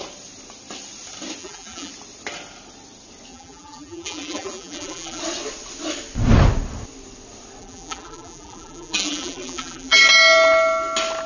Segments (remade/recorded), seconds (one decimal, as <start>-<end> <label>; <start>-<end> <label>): 0.0-1.4 recorded; 1.4-1.9 remade; 1.9-3.3 recorded; 3.3-5.2 remade; 5.2-7.6 recorded; 7.6-10.0 remade; 10.0-11.3 recorded